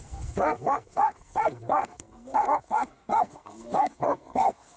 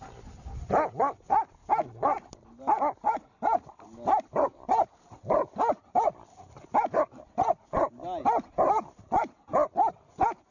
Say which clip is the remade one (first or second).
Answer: first